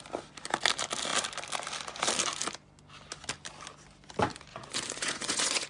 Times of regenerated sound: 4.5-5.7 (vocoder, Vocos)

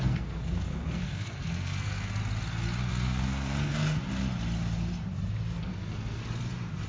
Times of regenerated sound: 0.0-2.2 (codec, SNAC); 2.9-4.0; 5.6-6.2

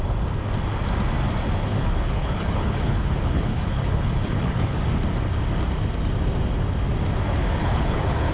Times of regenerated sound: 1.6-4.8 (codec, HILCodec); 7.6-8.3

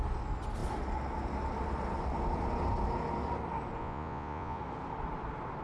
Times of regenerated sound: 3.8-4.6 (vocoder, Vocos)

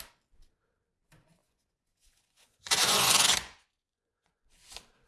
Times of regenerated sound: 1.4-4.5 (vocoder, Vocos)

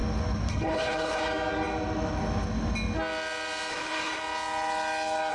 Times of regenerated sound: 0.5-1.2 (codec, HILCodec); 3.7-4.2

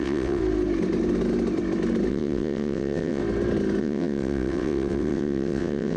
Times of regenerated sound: 0.0-0.4 (vocoder, WaveNeXt); 2.1-3.2; 3.8-6.0